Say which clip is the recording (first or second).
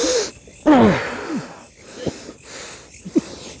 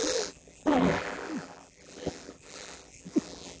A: first